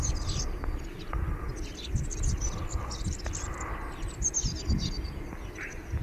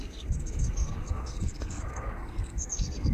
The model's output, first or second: second